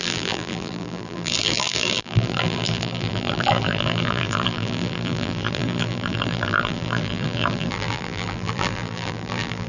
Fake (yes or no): yes